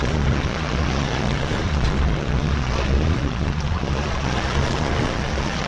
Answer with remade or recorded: remade